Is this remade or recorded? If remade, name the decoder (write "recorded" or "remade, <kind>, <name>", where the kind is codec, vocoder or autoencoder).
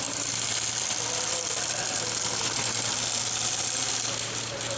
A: recorded